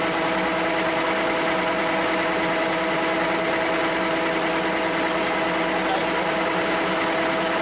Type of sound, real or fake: real